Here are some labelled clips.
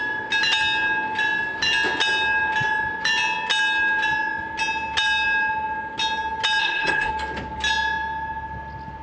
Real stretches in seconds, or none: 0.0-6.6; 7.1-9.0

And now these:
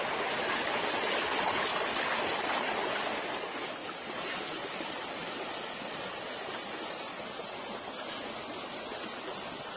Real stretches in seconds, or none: 0.0-9.8

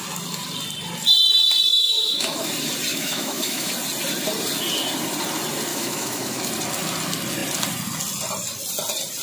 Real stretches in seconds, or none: 0.0-1.7; 2.5-2.9; 3.7-5.7; 6.5-9.2

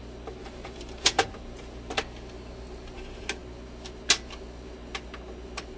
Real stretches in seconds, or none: 0.0-0.4; 1.3-5.8

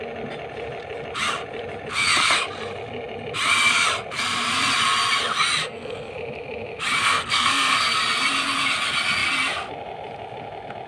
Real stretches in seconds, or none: 0.0-5.6; 6.1-7.0; 8.0-10.9